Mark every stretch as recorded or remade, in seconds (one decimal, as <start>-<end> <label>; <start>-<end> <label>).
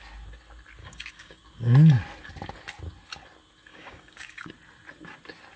0.0-0.8 recorded; 0.8-1.4 remade; 1.4-3.7 recorded; 3.7-4.5 remade; 4.5-5.6 recorded